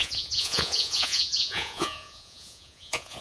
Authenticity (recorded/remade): remade